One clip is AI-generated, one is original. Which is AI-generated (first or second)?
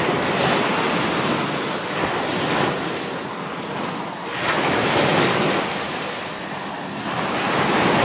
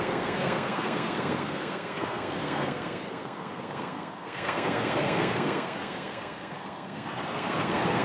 second